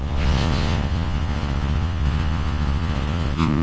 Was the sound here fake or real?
fake